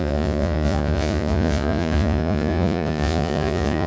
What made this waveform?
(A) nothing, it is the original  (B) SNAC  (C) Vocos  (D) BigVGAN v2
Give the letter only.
C